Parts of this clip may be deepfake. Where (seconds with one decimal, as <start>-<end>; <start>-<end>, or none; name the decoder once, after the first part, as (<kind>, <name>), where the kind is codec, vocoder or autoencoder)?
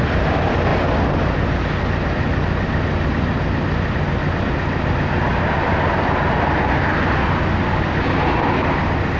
none